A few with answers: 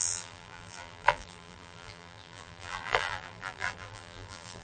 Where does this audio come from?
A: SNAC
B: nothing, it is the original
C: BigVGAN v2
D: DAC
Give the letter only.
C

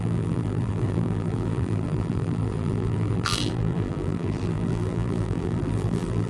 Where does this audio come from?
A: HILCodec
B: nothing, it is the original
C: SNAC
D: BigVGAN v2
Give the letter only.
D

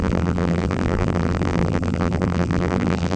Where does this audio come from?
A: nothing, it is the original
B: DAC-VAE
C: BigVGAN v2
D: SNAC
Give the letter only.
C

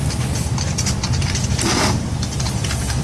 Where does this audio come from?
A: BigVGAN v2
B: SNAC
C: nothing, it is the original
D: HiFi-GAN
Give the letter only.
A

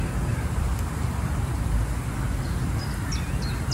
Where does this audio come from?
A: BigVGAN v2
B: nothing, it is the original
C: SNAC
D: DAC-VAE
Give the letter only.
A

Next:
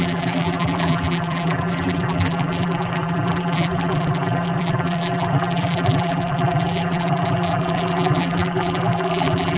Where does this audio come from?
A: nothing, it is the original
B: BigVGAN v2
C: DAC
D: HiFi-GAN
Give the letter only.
B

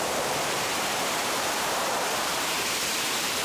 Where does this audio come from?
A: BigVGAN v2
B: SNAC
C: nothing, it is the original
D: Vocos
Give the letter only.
A